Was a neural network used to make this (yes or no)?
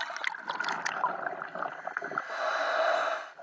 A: no